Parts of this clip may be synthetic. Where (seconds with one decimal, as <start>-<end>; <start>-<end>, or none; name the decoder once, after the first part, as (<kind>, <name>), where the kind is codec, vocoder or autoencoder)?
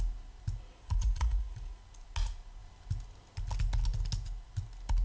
0.7-1.8 (vocoder, Vocos)